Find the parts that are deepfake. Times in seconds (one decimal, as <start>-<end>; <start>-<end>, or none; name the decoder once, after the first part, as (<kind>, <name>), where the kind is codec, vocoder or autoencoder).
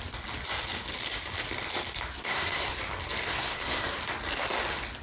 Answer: 2.1-2.8 (codec, SNAC); 3.3-4.0